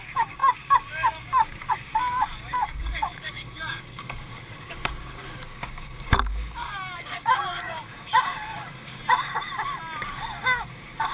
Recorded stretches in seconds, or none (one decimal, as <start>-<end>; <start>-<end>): 9.0-10.0